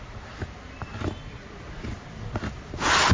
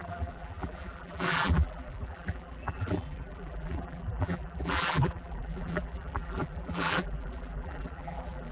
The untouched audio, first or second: first